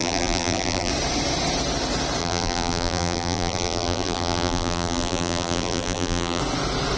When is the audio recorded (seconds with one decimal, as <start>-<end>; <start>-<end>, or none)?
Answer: 0.9-2.2; 6.4-7.0